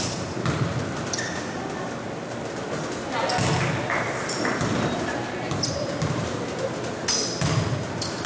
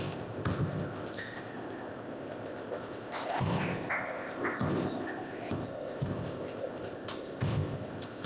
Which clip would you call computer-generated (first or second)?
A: second